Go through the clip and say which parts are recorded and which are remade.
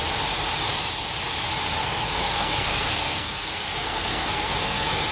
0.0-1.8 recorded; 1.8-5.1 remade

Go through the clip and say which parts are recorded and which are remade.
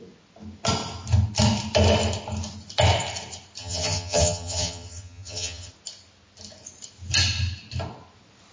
0.0-3.6 recorded; 3.6-5.7 remade; 5.7-8.5 recorded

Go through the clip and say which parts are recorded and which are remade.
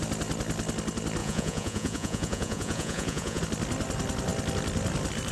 0.0-1.2 recorded; 1.2-3.4 remade; 3.4-5.3 recorded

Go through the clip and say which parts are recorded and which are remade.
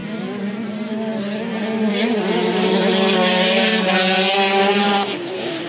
0.0-0.5 recorded; 0.5-1.1 remade; 1.1-1.9 recorded; 1.9-3.7 remade; 3.7-5.3 recorded; 5.3-5.7 remade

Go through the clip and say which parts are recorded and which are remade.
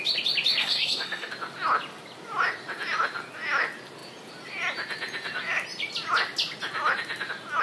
0.0-0.6 recorded; 0.6-1.3 remade; 1.3-7.6 recorded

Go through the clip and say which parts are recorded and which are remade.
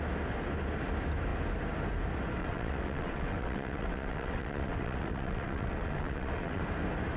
0.0-2.4 recorded; 2.4-6.6 remade; 6.6-7.2 recorded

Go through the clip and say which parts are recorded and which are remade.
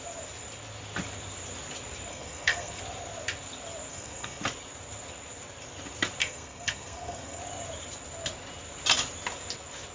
0.0-2.1 recorded; 2.1-2.8 remade; 2.8-3.9 recorded; 3.9-4.4 remade; 4.4-6.2 recorded; 6.2-7.4 remade; 7.4-9.9 recorded